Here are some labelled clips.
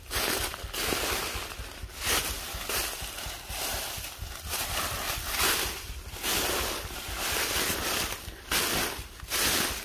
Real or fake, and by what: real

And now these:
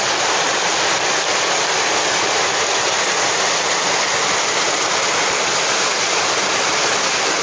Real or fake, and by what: real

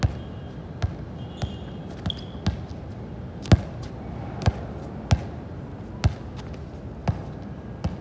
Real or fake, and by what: real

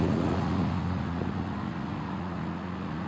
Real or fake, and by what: fake, vocoder, Vocos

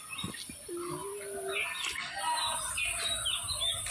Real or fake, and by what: real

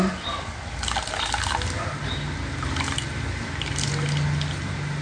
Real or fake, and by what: real